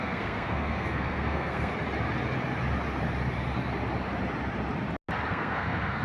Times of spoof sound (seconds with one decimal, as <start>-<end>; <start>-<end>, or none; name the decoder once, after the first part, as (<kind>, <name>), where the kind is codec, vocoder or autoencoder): 0.0-1.7 (codec, SNAC); 5.3-6.0